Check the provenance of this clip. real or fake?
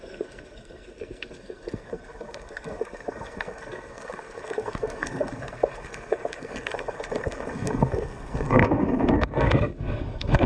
fake